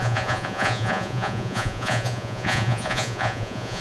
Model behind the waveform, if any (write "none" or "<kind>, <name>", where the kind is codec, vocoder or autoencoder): vocoder, Vocos